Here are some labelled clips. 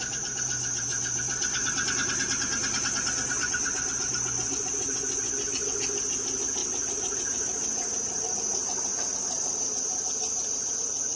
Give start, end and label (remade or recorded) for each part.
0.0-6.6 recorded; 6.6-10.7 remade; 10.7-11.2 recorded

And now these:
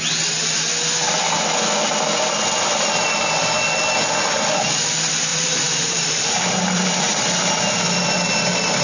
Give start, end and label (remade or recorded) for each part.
0.0-5.3 recorded; 5.3-7.1 remade; 7.1-8.8 recorded